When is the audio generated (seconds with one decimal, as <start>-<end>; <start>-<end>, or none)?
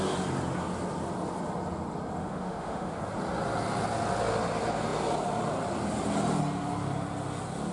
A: 2.2-3.0